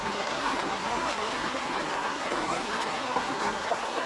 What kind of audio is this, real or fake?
fake